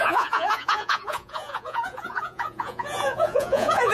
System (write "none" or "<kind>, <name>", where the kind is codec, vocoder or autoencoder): vocoder, Vocos